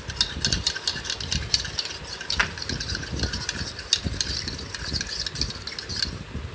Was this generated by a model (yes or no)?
no